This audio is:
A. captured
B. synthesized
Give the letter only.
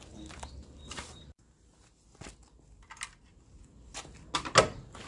A